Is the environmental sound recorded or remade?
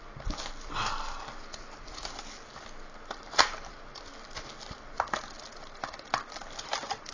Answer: recorded